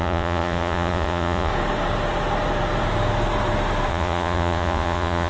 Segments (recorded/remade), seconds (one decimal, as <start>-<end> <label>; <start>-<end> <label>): 0.0-1.5 remade; 1.5-3.9 recorded; 3.9-5.3 remade